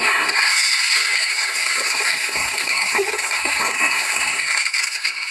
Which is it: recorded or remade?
remade